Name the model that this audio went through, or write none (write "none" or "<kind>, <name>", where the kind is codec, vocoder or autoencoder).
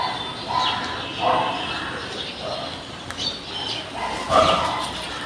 none